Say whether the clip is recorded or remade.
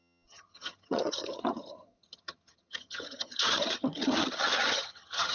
remade